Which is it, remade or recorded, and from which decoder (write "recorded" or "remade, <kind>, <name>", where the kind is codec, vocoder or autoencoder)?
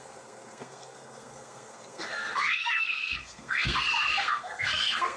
remade, codec, SNAC